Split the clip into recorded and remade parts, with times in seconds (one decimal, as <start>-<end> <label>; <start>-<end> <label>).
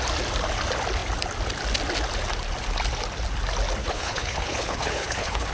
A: 0.0-3.8 recorded; 3.8-5.5 remade